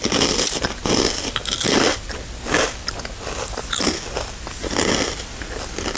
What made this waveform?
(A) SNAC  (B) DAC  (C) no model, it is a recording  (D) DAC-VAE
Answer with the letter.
C